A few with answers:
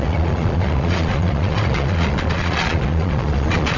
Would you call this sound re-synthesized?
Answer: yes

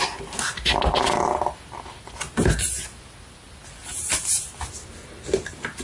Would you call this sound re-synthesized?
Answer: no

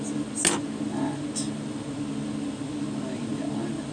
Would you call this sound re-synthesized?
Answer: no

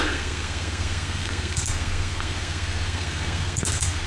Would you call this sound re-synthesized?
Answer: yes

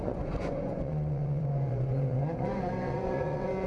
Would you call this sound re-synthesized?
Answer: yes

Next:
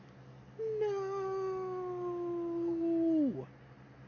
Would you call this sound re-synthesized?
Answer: no